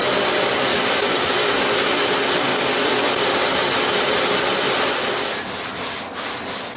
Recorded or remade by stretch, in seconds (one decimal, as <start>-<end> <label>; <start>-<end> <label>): 0.0-6.8 recorded